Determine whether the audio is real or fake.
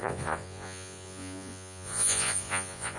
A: fake